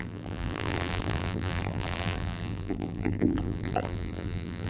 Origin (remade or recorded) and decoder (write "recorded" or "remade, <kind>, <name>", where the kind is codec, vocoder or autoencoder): remade, vocoder, BigVGAN v2